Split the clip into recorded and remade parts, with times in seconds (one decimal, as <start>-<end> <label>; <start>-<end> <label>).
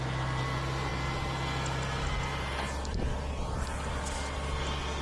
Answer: 0.0-5.0 recorded